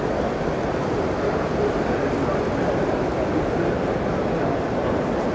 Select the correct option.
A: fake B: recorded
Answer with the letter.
B